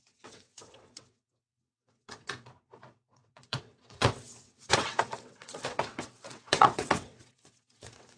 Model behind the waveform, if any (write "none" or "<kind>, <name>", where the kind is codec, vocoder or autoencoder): vocoder, WaveNeXt